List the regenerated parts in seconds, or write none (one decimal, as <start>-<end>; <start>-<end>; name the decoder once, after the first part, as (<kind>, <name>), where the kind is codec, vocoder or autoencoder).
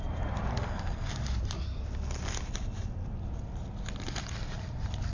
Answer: 0.5-1.1 (codec, SNAC)